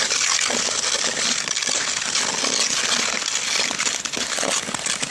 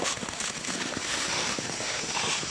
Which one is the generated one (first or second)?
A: second